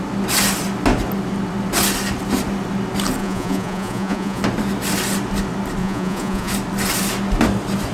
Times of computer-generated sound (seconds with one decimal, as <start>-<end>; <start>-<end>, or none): 3.2-4.4; 5.8-6.5